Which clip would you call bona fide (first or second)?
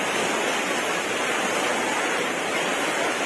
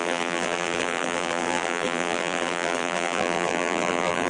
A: first